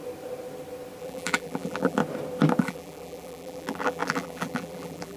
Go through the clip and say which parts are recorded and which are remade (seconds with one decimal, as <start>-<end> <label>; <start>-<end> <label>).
0.0-1.0 recorded; 1.0-2.0 remade; 2.0-2.6 recorded; 2.6-5.2 remade